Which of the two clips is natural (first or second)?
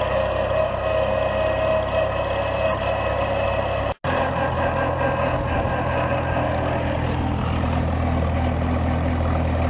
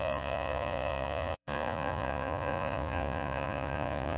first